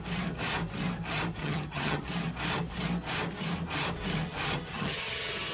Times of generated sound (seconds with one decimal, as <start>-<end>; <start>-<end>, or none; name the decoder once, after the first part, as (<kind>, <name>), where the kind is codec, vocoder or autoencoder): 1.4-2.0 (vocoder, HiFi-GAN); 4.7-5.5